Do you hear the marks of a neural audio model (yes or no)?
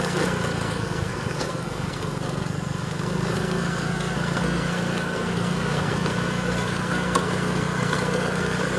yes